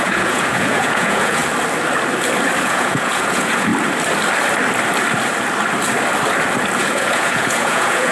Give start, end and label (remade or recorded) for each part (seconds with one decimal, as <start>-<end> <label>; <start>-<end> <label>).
0.0-1.4 remade; 1.4-2.6 recorded; 2.6-3.7 remade; 3.7-6.8 recorded; 6.8-8.1 remade